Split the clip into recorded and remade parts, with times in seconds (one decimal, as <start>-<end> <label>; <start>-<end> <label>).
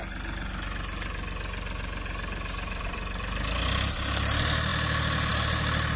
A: 0.0-6.0 recorded